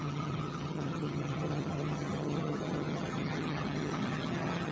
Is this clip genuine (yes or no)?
no